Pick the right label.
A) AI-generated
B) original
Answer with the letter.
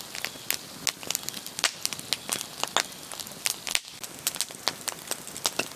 B